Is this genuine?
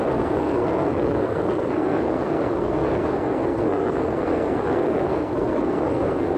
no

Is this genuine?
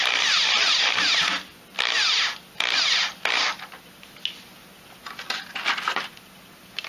yes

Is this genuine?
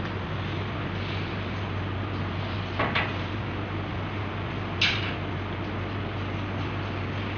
yes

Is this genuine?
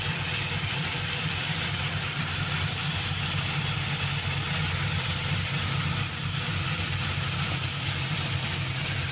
yes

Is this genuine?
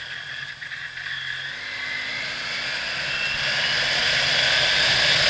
yes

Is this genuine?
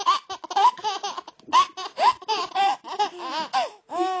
yes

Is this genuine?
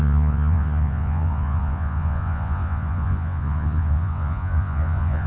no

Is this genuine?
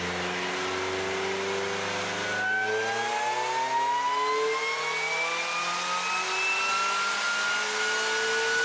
yes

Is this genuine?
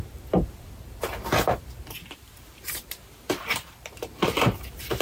no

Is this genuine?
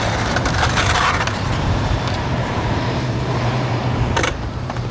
no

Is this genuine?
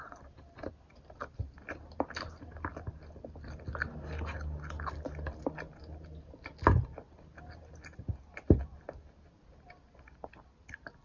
yes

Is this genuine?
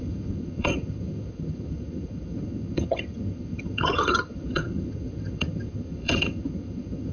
no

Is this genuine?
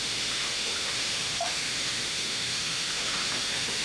no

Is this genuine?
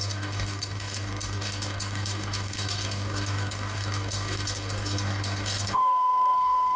no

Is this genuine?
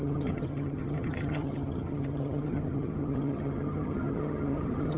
no